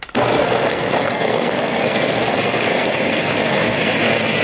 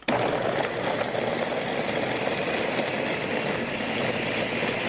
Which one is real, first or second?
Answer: second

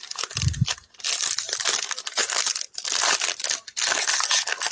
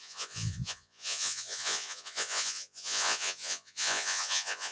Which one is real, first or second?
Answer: first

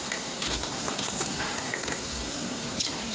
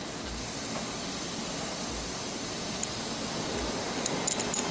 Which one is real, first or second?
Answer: second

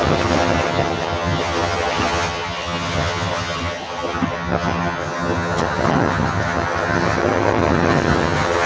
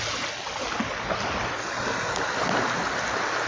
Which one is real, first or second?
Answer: second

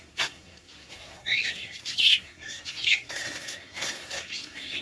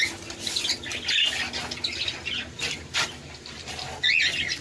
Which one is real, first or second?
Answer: second